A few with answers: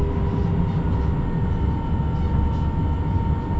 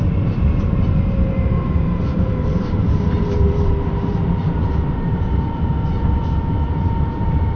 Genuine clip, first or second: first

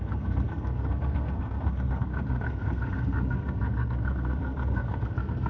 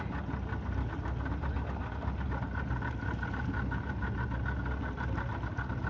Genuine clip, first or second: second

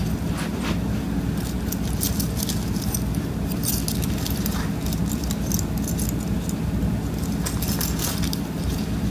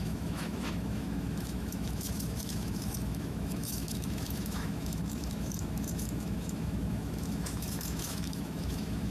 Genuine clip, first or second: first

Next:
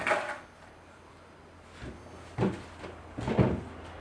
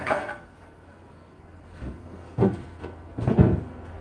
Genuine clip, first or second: first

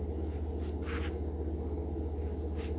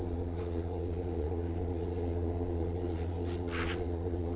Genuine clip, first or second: first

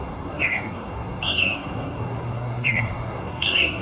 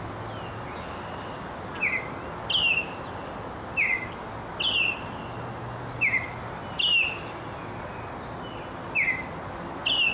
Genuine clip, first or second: second